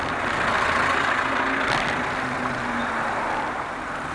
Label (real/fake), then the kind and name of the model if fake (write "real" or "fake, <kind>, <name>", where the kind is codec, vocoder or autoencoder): real